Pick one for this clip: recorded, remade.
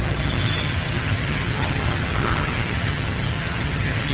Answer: remade